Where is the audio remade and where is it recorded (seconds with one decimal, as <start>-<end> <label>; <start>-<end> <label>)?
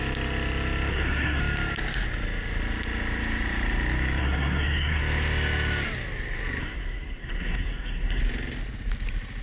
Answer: 0.0-0.9 recorded; 0.9-1.4 remade; 1.4-4.2 recorded; 4.2-5.0 remade; 5.0-6.6 recorded; 6.6-8.2 remade; 8.2-9.4 recorded